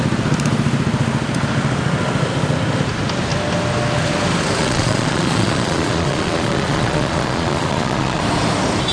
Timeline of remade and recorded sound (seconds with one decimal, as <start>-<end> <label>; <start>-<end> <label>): 0.0-4.6 recorded; 4.6-8.2 remade; 8.2-8.9 recorded

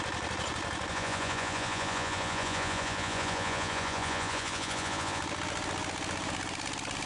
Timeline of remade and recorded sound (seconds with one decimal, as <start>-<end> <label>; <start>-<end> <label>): 0.0-0.9 recorded; 0.9-5.2 remade; 5.2-7.1 recorded